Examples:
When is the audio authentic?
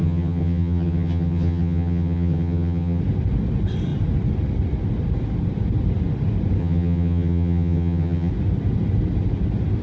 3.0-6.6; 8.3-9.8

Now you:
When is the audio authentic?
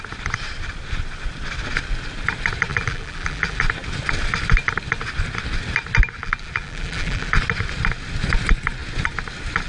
0.0-2.7; 3.6-6.2; 7.3-9.7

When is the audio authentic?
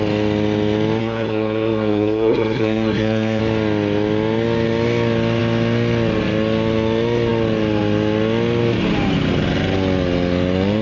0.0-1.0; 3.4-10.8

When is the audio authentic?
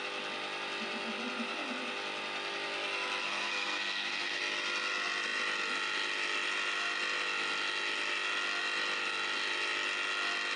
0.0-3.2; 4.4-10.6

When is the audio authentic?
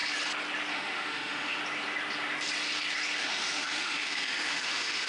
0.0-0.7; 1.6-3.2